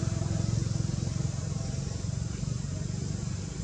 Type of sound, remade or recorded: recorded